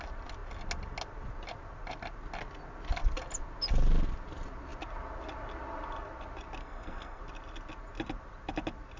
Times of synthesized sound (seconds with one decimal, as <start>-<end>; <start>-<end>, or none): 6.6-7.2